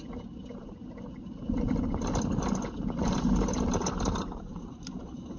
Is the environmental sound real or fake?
real